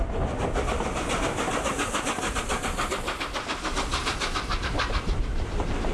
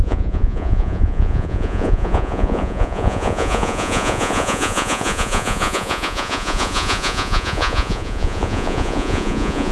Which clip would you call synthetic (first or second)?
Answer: second